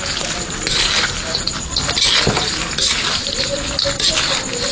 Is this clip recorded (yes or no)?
yes